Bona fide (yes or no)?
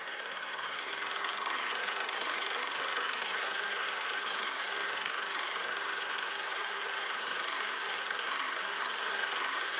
no